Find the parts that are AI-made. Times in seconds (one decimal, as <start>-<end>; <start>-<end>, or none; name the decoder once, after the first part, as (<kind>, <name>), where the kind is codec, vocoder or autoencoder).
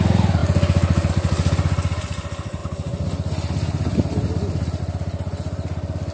none